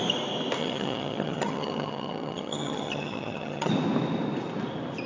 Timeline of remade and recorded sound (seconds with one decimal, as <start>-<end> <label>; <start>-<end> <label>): 0.0-0.6 recorded; 0.6-3.7 remade; 3.7-5.1 recorded